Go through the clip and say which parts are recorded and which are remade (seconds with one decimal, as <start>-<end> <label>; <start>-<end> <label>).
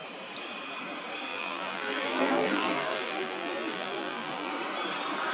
0.0-1.3 recorded; 1.3-4.5 remade; 4.5-5.3 recorded